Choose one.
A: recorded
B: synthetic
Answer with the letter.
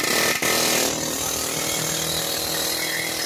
A